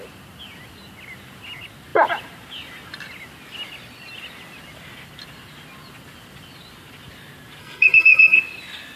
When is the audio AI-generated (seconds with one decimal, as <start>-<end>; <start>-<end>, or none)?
7.6-8.4